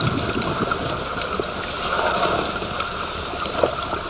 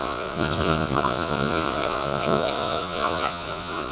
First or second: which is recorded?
first